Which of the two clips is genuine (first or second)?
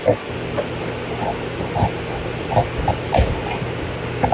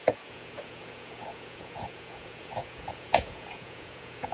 first